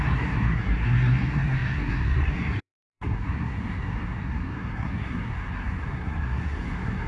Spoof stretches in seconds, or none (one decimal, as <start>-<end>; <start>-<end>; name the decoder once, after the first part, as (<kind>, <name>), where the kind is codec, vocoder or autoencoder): 0.0-7.1 (codec, SNAC)